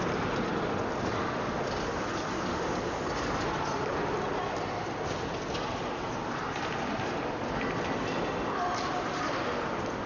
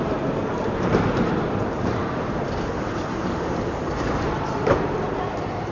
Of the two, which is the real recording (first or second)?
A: first